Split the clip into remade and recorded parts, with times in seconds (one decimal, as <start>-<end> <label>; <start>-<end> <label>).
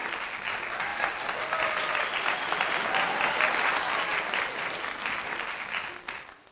0.0-6.5 recorded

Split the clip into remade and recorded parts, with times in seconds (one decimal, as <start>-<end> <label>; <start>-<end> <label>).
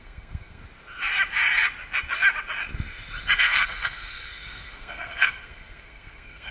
0.0-0.6 remade; 0.6-3.4 recorded; 3.4-6.5 remade